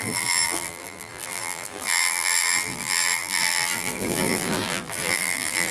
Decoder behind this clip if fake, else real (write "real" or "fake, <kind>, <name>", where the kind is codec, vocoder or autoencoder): fake, vocoder, BigVGAN v2